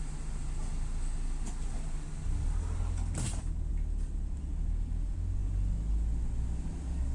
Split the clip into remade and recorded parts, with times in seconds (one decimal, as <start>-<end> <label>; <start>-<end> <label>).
0.0-7.1 recorded